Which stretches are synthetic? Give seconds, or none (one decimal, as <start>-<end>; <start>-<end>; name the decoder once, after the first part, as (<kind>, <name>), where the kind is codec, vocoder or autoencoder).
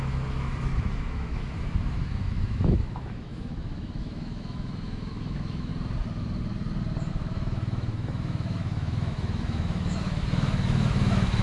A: 0.0-5.7 (autoencoder, DAC-VAE); 7.1-11.4